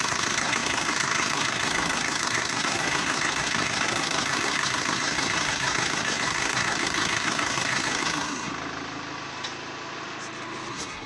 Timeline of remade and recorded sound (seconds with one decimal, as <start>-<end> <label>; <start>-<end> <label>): 0.0-8.5 remade; 8.5-10.7 recorded; 10.7-11.1 remade